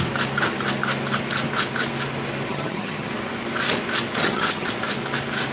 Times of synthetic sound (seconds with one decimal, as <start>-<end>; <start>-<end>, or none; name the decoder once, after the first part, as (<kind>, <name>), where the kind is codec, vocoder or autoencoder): 2.5-3.1 (vocoder, HiFi-GAN); 4.2-4.7